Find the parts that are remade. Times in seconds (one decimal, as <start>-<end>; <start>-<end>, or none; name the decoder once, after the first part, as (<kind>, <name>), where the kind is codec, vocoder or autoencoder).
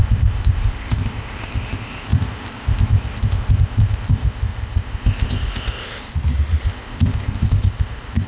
0.0-6.1 (codec, ZipCodec); 6.6-8.3